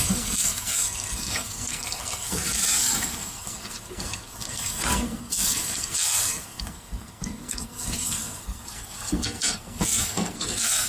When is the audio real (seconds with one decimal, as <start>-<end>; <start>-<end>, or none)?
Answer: none